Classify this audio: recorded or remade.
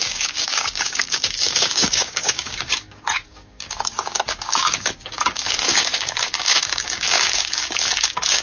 remade